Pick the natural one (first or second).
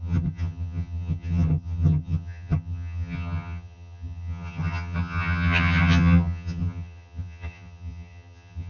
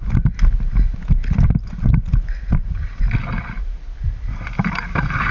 second